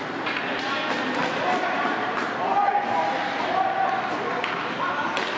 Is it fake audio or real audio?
real